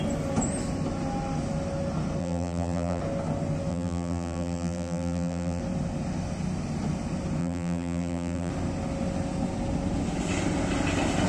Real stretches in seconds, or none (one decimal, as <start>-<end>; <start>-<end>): 0.0-2.2; 3.0-3.7; 5.6-7.4; 8.5-11.3